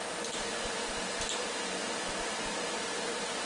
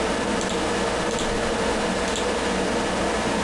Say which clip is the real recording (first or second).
second